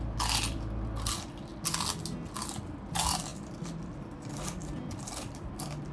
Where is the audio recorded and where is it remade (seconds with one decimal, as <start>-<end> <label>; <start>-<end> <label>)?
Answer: 0.0-1.5 remade; 1.5-2.4 recorded; 2.4-5.9 remade